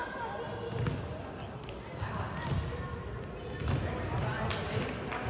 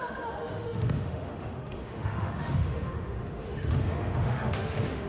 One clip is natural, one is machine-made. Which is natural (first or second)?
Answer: first